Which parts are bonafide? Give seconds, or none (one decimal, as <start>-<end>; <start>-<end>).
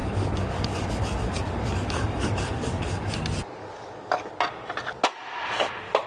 3.1-3.6; 4.3-6.1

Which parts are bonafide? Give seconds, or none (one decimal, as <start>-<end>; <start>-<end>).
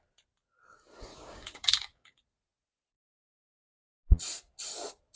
0.0-1.1; 2.2-5.2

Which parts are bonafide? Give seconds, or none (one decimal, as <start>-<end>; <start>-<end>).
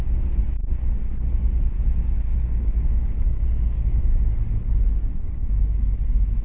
0.0-2.3; 4.0-5.0; 5.6-6.4